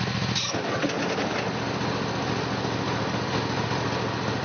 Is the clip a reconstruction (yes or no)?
no